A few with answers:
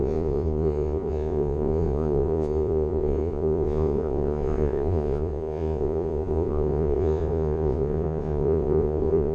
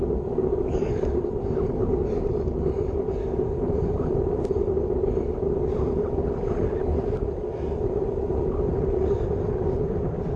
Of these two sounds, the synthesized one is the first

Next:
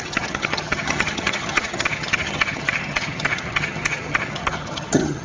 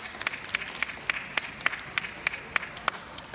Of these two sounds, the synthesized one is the first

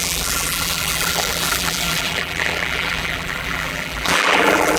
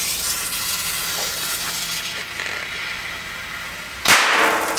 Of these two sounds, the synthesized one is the first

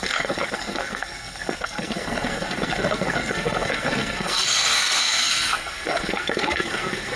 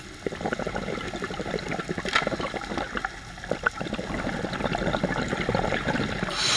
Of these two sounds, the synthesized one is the first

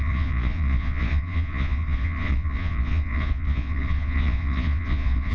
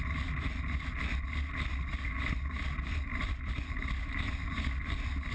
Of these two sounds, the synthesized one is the first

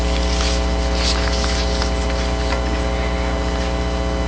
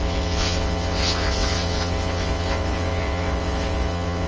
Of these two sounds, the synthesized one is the second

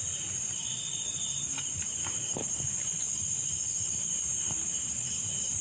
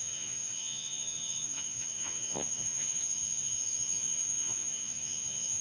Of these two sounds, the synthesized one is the second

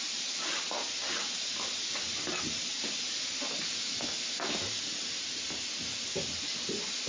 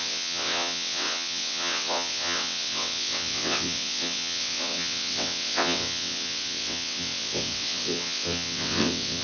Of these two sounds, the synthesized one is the second